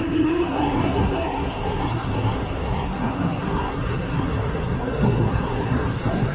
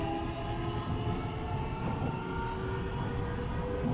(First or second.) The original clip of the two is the second